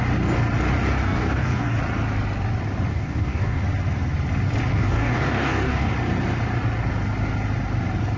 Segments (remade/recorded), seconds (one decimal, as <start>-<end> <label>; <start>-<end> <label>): 0.0-1.0 recorded; 1.0-1.8 remade; 1.8-2.9 recorded; 2.9-3.6 remade; 3.6-4.7 recorded; 4.7-5.9 remade; 5.9-8.2 recorded